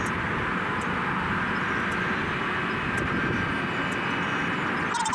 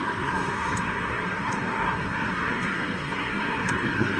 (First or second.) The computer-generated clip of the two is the second